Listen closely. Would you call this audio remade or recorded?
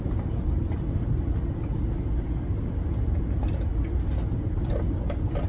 recorded